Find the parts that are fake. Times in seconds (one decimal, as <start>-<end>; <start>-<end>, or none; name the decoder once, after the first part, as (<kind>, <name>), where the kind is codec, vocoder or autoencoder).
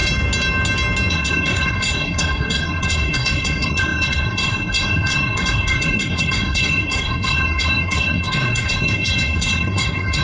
1.1-10.2 (codec, SNAC)